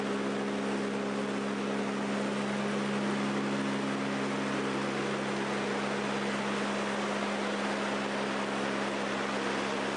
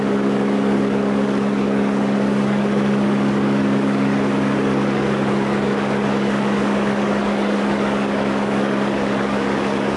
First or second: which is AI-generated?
second